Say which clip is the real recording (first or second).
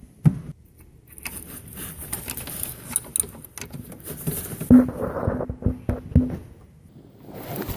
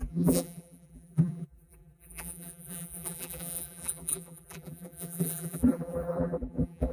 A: first